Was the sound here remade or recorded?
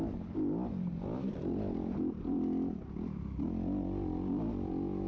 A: recorded